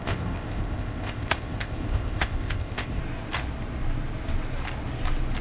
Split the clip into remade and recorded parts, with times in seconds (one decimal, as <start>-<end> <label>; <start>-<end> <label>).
0.0-3.0 remade; 3.0-5.4 recorded